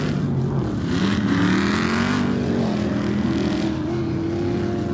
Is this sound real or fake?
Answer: real